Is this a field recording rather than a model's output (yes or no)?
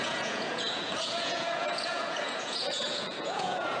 no